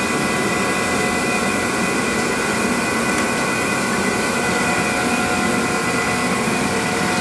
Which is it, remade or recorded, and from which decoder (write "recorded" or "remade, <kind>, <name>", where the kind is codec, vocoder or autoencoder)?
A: recorded